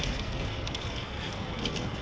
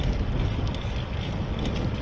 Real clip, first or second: second